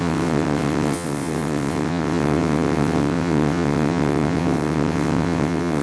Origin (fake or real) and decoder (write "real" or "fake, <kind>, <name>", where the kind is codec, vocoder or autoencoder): fake, vocoder, WaveNeXt